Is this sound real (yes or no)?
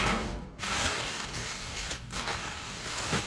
no